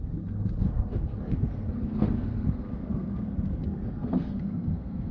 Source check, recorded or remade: remade